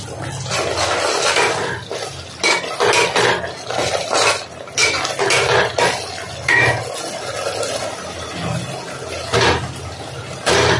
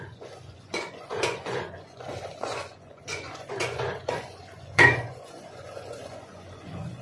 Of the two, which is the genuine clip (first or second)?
first